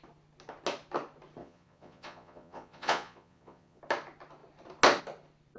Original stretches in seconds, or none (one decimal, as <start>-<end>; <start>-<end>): 0.0-1.4; 3.8-5.6